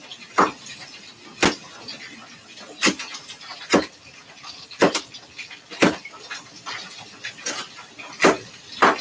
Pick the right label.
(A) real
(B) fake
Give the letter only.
A